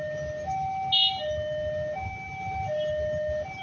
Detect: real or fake real